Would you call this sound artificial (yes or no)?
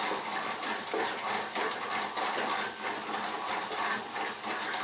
no